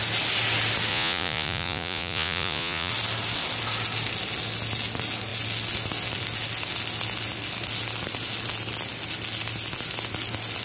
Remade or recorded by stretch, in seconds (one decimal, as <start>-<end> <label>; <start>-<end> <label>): 0.0-0.9 recorded; 0.9-2.9 remade; 2.9-10.6 recorded